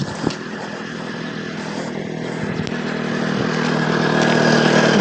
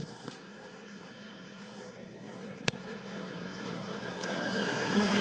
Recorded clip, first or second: first